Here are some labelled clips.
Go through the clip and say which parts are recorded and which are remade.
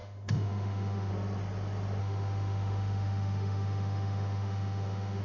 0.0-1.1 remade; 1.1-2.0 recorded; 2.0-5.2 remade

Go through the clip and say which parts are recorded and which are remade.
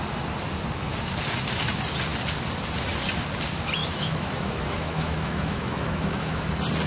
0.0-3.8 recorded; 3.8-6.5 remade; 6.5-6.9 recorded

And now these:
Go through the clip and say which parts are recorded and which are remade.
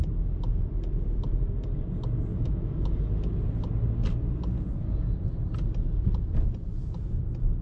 0.0-2.3 recorded; 2.3-2.9 remade; 2.9-7.6 recorded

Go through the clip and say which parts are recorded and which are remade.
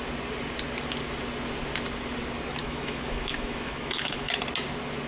0.0-2.6 recorded; 2.6-4.3 remade; 4.3-5.1 recorded